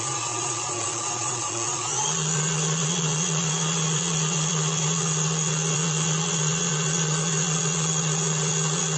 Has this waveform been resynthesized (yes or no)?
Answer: yes